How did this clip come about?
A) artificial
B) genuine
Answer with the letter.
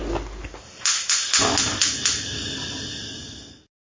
B